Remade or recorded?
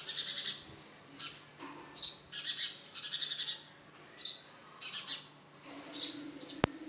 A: recorded